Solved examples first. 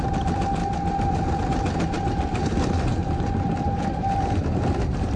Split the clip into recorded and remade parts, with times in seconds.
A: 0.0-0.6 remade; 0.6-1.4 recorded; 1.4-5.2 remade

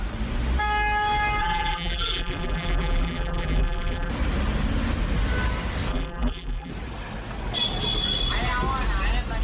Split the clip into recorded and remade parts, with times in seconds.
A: 0.0-1.4 recorded; 1.4-4.1 remade; 4.1-5.9 recorded; 5.9-6.7 remade; 6.7-9.4 recorded

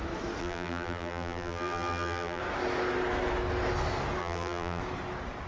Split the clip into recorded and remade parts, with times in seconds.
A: 0.0-0.4 recorded; 0.4-2.4 remade; 2.4-4.2 recorded; 4.2-4.8 remade; 4.8-5.5 recorded

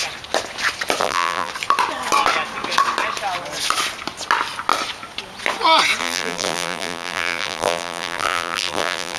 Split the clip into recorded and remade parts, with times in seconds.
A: 0.0-1.0 recorded; 1.0-1.5 remade; 1.5-6.0 recorded; 6.0-9.2 remade